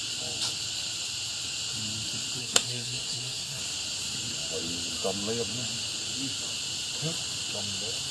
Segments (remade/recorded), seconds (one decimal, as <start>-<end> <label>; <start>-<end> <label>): 0.0-2.4 recorded; 2.4-3.6 remade; 3.6-8.1 recorded

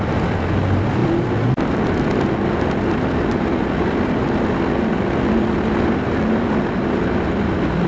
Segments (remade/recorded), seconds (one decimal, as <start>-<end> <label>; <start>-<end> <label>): 0.0-7.9 recorded

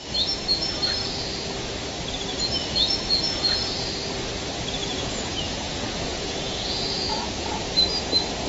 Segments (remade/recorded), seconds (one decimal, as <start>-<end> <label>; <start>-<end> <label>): 0.0-2.3 recorded; 2.3-3.9 remade; 3.9-4.8 recorded; 4.8-7.5 remade; 7.5-8.5 recorded

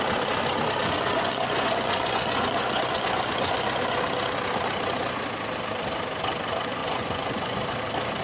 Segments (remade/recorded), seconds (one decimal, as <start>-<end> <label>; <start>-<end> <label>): 0.0-0.8 recorded; 0.8-3.8 remade; 3.8-6.8 recorded; 6.8-7.6 remade; 7.6-8.2 recorded

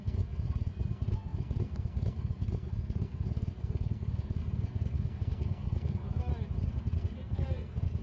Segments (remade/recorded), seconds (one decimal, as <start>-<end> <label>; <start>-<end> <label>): 0.0-6.3 remade; 6.3-6.8 recorded; 6.8-8.0 remade

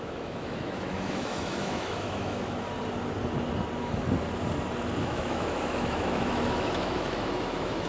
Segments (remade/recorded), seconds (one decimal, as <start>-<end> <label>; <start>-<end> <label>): 0.0-2.7 remade; 2.7-5.0 recorded; 5.0-7.9 remade

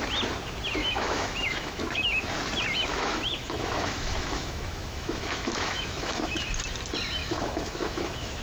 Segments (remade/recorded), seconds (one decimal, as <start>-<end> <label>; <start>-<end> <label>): 0.0-0.8 recorded; 0.8-2.3 remade; 2.3-2.9 recorded; 2.9-6.5 remade; 6.5-7.2 recorded; 7.2-8.4 remade

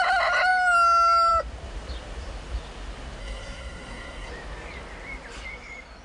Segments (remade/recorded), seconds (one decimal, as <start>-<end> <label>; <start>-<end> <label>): 0.0-3.2 recorded; 3.2-4.3 remade; 4.3-6.0 recorded